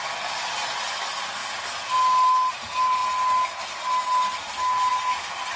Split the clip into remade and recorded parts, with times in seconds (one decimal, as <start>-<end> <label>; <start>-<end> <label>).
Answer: 0.0-5.6 recorded